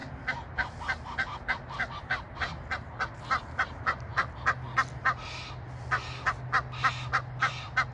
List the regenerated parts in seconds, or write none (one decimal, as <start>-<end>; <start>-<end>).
none